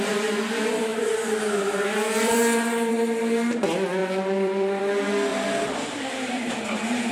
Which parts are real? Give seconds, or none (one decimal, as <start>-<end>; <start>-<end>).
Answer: 0.0-0.9; 2.9-4.0; 4.8-5.3; 6.6-7.1